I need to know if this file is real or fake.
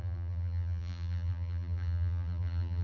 fake